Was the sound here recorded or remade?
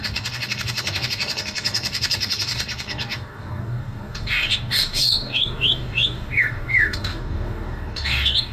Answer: remade